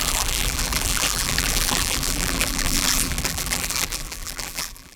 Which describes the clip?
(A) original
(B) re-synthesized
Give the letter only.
B